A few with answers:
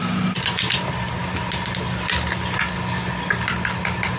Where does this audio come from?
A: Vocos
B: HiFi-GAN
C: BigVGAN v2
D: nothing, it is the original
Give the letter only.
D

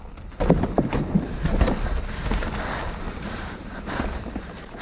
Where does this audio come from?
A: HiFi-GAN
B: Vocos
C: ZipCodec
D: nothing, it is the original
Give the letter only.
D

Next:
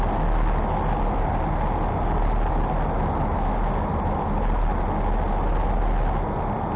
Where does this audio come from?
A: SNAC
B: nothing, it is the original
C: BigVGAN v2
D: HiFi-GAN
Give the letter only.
B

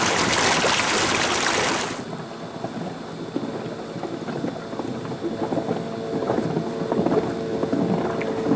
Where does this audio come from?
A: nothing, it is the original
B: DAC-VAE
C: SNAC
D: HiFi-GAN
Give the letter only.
A